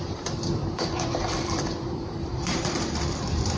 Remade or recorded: remade